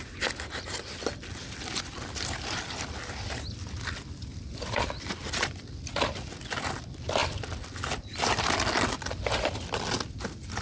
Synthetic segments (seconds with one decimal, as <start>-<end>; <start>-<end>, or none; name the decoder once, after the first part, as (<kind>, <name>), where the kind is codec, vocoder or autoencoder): none